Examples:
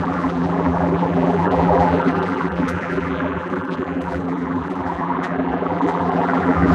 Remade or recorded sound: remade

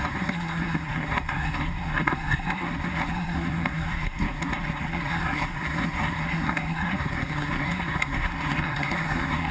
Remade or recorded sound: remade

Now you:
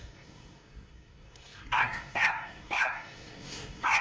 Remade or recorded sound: remade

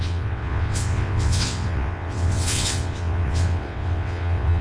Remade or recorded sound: remade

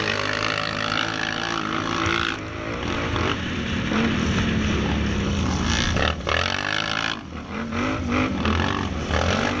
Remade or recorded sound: recorded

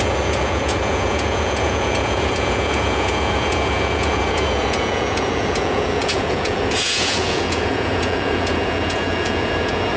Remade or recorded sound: remade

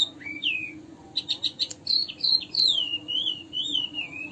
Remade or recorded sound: remade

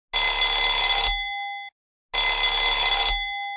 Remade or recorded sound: recorded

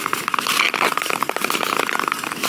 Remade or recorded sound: recorded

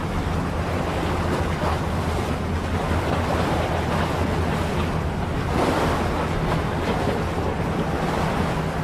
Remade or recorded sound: recorded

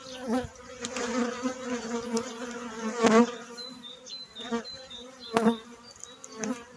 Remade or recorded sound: recorded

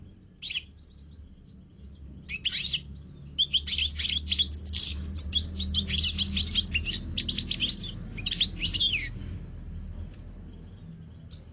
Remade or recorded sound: recorded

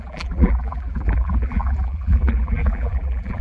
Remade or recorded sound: remade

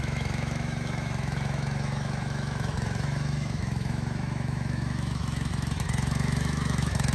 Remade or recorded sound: remade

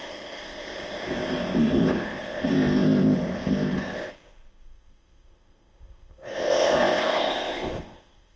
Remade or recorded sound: remade